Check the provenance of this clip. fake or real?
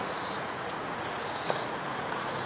fake